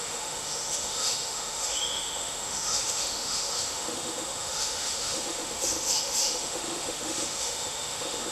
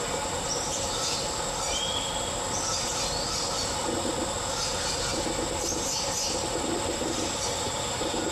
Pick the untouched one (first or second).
second